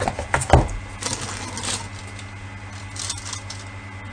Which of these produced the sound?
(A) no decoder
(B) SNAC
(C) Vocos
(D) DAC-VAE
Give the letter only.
A